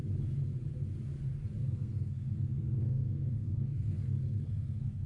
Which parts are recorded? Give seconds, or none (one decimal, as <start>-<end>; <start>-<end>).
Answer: 0.0-1.6